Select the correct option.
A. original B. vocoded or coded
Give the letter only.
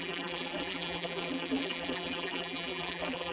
B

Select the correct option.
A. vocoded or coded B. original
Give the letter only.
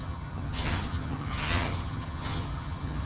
A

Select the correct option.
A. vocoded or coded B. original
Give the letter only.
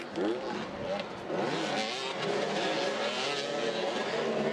B